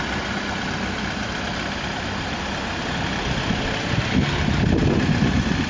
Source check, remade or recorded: remade